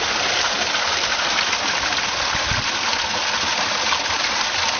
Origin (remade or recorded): recorded